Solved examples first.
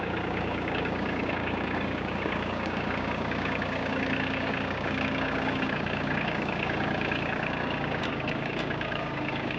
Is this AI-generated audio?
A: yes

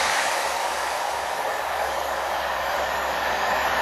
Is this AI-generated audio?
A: yes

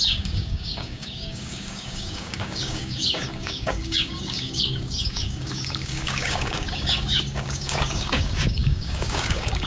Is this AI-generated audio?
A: yes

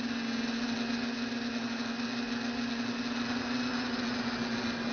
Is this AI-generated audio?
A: no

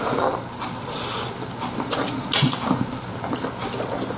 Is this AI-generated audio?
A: no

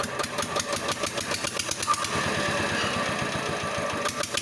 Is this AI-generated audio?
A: no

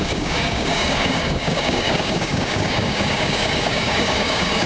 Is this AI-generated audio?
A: yes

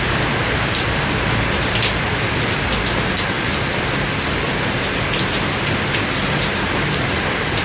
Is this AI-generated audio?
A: no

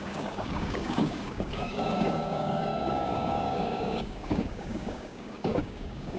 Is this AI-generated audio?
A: yes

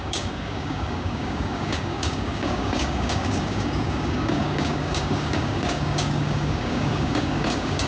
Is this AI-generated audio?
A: yes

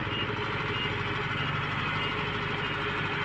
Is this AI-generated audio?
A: no